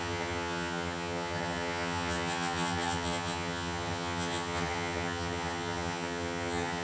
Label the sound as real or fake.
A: fake